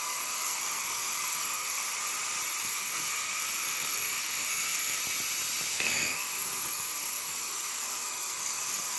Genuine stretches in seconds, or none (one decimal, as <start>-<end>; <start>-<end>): 1.8-2.6; 5.0-5.7